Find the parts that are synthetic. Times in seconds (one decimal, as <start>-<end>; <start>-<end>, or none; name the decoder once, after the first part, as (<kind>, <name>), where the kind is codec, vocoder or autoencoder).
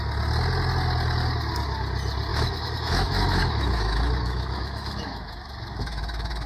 2.3-6.5 (autoencoder, DAC-VAE)